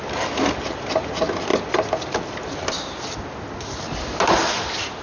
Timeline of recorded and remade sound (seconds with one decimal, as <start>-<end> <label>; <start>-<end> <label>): 0.0-5.0 recorded

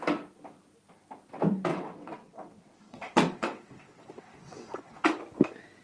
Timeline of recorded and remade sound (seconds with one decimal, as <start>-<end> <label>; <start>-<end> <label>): 0.0-1.7 recorded; 1.7-5.2 remade; 5.2-5.8 recorded